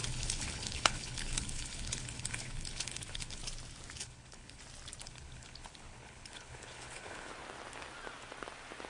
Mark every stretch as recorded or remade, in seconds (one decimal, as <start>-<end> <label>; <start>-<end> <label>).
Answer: 0.0-3.4 remade; 3.4-4.0 recorded; 4.0-4.6 remade; 4.6-5.0 recorded; 5.0-7.3 remade; 7.3-8.9 recorded